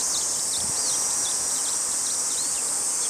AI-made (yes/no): no